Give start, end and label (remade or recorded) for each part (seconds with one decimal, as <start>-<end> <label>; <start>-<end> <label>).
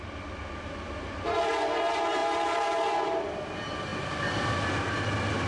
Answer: 0.0-3.9 remade; 3.9-5.5 recorded